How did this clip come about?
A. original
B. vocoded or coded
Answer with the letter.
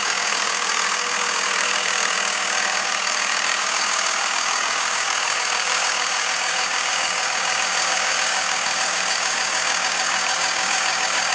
B